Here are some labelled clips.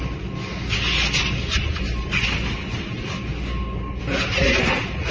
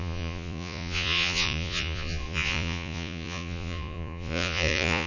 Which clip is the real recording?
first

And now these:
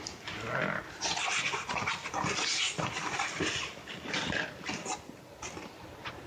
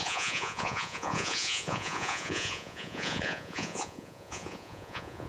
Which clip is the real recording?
first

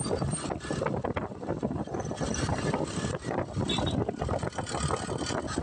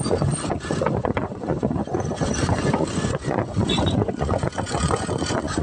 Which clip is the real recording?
first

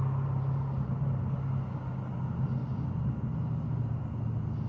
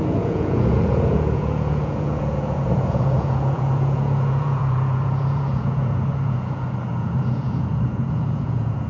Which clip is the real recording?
first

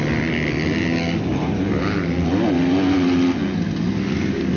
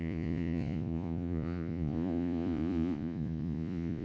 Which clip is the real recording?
first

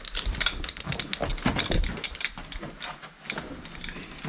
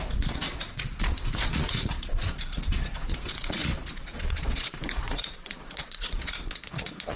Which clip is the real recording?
first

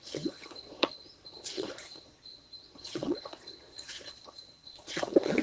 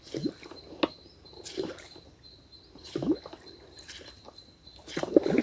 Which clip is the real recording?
second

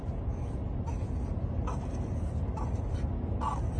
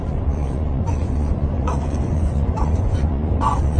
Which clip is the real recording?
first